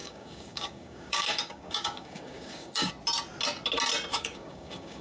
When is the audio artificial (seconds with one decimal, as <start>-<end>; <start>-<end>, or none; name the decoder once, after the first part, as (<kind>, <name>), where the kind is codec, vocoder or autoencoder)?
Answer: 0.0-2.9 (codec, DAC); 4.1-5.0